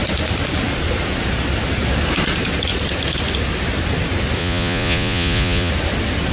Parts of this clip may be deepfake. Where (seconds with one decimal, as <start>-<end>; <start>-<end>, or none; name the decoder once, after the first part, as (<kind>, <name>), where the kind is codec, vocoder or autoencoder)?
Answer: 4.4-5.7 (vocoder, Vocos)